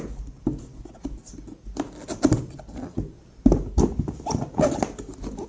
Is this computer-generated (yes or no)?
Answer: no